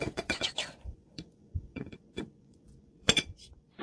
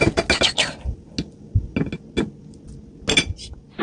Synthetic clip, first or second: first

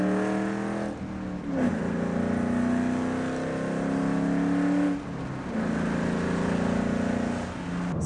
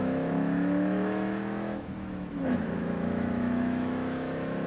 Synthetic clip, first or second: second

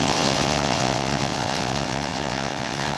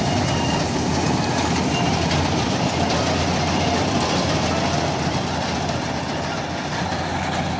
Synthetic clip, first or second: first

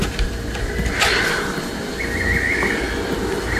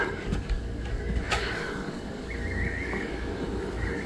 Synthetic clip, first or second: second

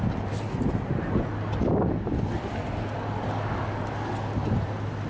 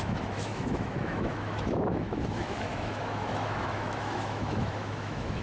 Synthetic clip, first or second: second